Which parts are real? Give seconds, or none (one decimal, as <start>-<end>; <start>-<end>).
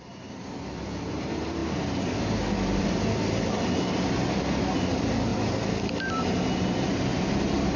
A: 1.6-2.8; 5.3-6.1